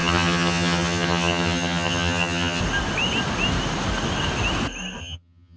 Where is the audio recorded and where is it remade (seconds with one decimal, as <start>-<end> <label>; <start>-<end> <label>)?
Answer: 0.0-2.6 remade; 2.6-5.0 recorded; 5.0-5.6 remade